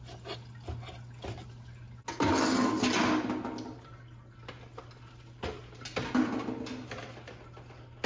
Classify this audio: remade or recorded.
recorded